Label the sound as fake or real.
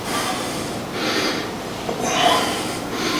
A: real